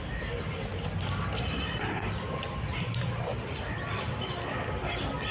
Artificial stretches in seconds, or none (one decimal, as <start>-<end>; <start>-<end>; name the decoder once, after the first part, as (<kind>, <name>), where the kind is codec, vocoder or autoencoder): none